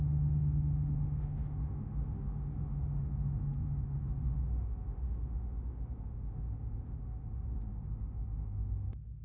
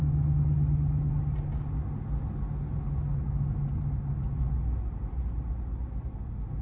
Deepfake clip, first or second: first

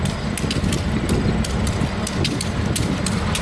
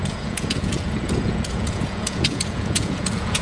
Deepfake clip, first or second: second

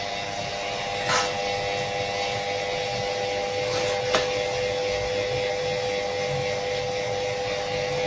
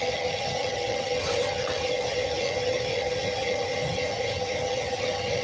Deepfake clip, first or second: second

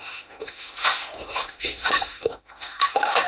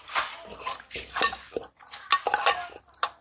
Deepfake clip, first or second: first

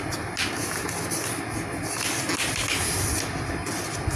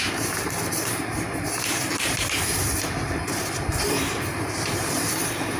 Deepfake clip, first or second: second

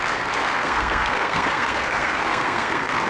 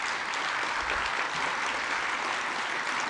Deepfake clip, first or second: first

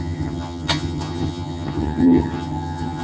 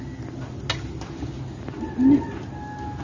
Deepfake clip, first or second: first